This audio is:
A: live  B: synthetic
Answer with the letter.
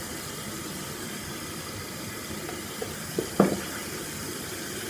B